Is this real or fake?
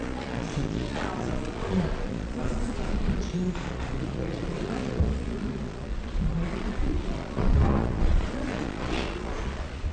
fake